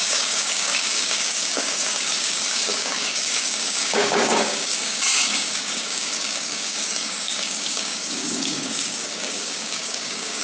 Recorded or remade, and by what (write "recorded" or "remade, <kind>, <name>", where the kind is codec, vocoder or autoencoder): remade, codec, DAC